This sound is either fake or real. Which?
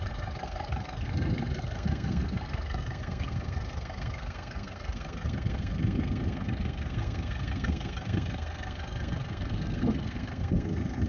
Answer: fake